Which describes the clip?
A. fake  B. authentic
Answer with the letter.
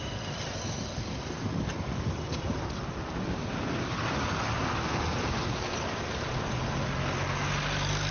B